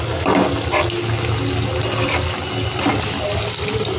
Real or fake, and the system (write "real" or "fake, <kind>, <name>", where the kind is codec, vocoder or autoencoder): real